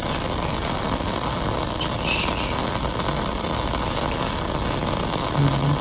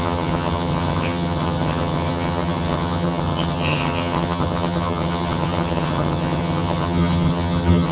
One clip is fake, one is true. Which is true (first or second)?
first